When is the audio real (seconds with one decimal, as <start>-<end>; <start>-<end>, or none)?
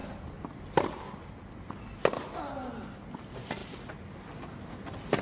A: 0.0-5.2